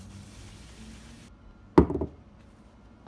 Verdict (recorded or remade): recorded